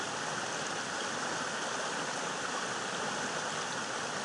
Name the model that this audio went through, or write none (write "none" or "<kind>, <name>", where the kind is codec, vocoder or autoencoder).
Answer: none